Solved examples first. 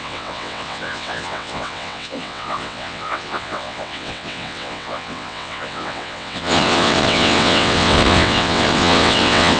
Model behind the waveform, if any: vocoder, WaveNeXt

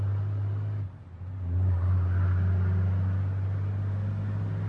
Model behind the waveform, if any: none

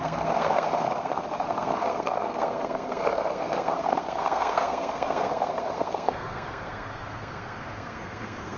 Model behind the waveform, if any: codec, SNAC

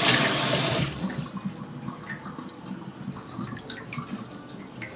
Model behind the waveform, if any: none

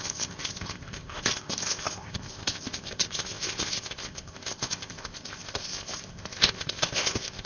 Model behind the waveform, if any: codec, ZipCodec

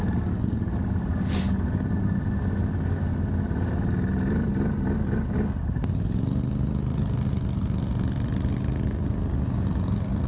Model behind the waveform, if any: none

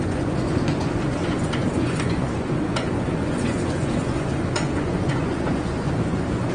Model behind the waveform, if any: vocoder, Vocos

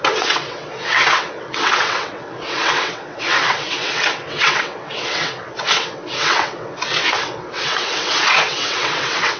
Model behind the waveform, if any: vocoder, WaveNeXt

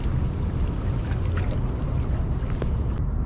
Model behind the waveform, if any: none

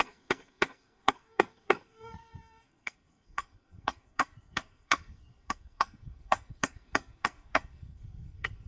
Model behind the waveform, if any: codec, SNAC